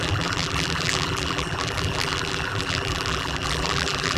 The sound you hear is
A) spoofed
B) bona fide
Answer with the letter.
A